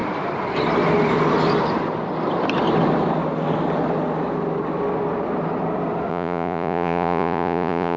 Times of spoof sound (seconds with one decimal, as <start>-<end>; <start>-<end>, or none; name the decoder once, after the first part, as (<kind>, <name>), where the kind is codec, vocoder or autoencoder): 6.1-8.0 (vocoder, Vocos)